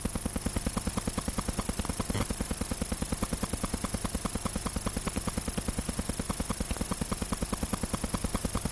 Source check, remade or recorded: recorded